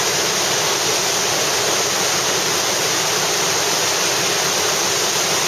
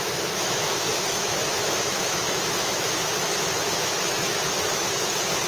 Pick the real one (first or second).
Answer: first